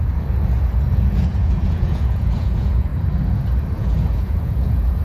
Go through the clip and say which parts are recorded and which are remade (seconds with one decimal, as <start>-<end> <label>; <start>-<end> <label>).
0.0-2.9 remade; 2.9-3.8 recorded; 3.8-5.0 remade